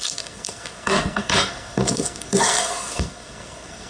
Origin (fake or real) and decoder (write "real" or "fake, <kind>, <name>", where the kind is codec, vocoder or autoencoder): fake, codec, SNAC